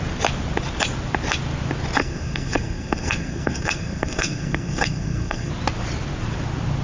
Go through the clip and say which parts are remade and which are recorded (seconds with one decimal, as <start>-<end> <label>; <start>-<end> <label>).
0.0-2.0 recorded; 2.0-5.5 remade; 5.5-6.8 recorded